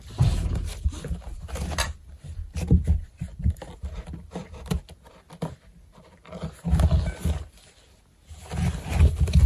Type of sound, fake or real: real